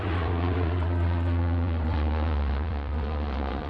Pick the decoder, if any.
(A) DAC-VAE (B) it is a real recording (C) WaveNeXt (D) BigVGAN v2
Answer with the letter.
C